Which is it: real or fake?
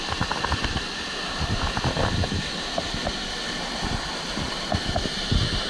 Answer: real